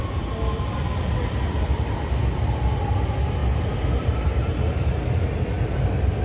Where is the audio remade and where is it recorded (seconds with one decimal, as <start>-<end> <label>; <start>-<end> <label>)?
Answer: 0.0-3.4 recorded; 3.4-4.9 remade; 4.9-6.2 recorded